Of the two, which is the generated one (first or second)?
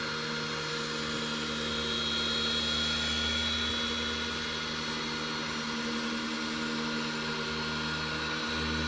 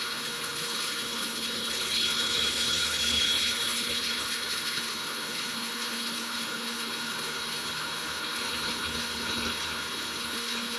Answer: second